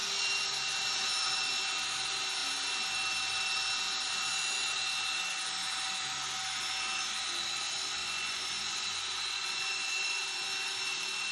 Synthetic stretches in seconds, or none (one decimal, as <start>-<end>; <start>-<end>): 8.0-10.2